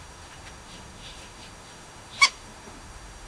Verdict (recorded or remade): remade